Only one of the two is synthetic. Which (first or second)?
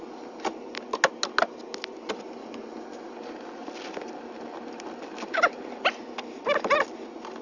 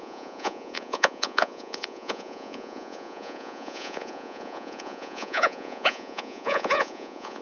second